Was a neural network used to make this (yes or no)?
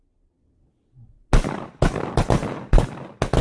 no